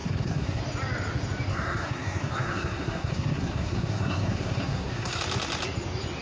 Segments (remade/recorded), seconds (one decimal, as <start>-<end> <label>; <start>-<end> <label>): 0.0-0.6 remade; 0.6-1.5 recorded; 1.5-5.2 remade; 5.2-6.2 recorded